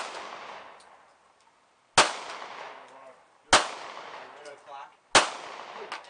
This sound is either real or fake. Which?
real